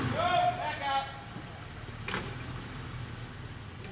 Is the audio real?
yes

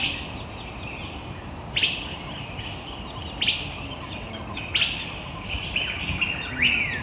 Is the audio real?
yes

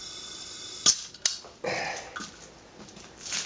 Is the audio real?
yes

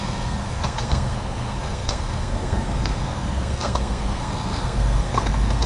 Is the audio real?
no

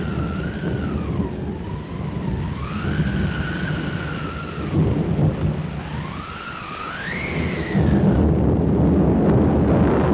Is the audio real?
yes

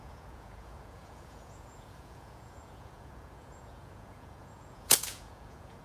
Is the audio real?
no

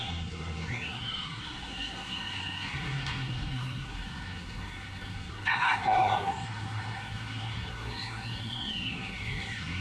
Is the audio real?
no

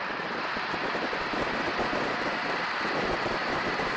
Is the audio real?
yes